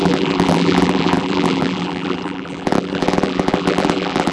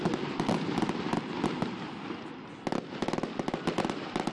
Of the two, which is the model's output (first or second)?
first